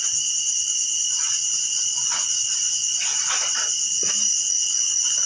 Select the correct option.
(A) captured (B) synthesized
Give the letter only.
A